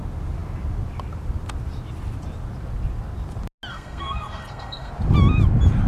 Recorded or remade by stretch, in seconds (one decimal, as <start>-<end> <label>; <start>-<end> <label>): 0.0-3.7 recorded; 3.7-4.9 remade; 4.9-5.9 recorded